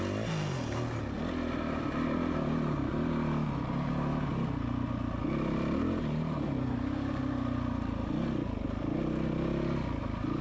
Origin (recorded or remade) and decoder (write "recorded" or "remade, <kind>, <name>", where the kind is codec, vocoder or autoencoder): recorded